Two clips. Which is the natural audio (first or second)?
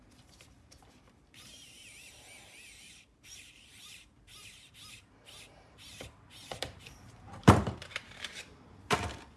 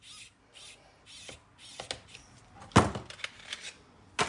second